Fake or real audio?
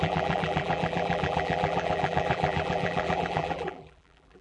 fake